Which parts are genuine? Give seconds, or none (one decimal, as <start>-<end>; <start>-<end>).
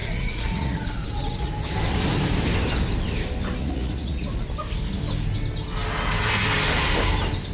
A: 1.5-3.6; 4.4-7.5